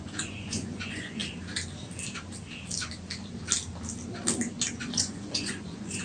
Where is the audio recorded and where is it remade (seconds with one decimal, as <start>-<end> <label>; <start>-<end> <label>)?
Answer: 0.0-1.2 remade; 1.2-4.7 recorded; 4.7-6.0 remade